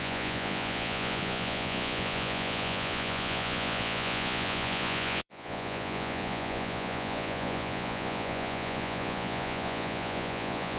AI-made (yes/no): yes